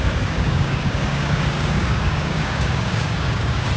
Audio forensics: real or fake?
fake